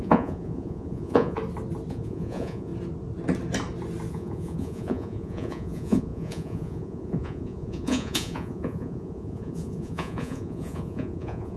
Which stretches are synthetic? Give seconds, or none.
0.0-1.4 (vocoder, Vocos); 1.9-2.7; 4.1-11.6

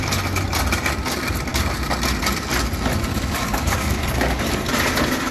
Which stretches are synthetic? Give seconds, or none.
3.1-4.4 (codec, DAC)

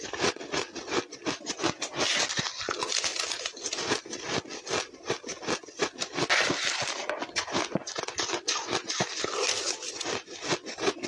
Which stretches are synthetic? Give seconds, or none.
none

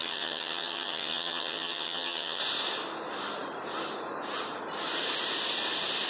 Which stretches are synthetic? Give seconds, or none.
0.0-2.4 (vocoder, HiFi-GAN)

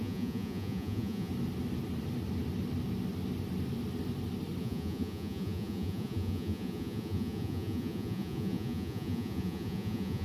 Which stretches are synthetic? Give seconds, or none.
0.0-1.3 (vocoder, Vocos); 4.6-10.2

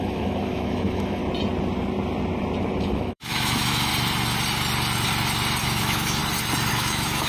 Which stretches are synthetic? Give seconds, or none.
0.0-1.2 (autoencoder, DAC-VAE); 2.8-3.9; 5.6-6.2; 6.7-7.3

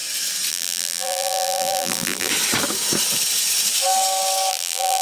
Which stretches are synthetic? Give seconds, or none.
0.5-2.3 (vocoder, BigVGAN v2); 4.5-5.0